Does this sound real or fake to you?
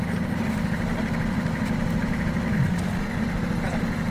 real